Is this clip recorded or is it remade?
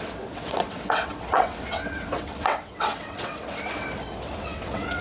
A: remade